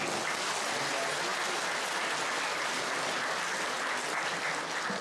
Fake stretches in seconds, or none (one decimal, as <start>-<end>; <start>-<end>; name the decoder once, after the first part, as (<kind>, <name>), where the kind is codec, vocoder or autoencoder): none